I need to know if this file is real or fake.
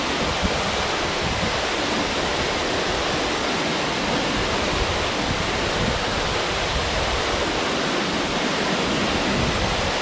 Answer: real